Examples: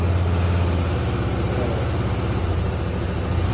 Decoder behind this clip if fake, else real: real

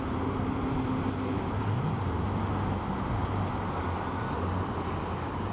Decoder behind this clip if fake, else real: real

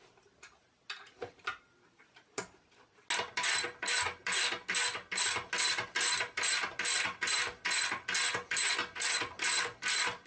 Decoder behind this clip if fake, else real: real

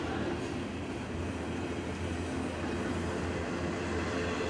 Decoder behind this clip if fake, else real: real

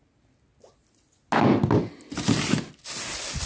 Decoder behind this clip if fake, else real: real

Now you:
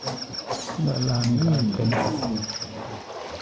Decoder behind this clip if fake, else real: real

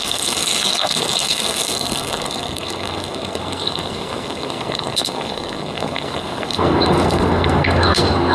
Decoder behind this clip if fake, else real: fake, codec, SNAC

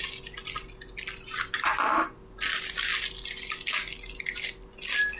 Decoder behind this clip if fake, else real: real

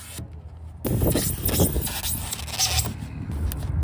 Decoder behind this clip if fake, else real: real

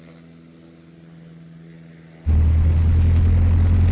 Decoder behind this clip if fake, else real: real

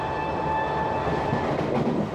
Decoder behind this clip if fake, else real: real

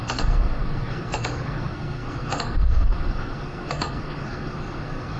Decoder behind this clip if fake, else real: fake, codec, SNAC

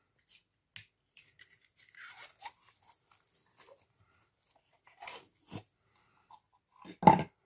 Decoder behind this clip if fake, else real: real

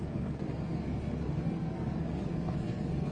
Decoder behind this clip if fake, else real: fake, codec, SNAC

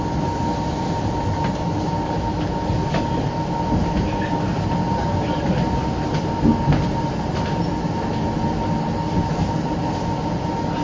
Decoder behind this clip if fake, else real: real